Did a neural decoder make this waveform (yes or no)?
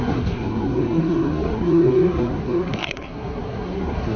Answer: yes